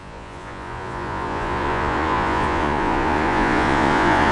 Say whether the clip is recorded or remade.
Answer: remade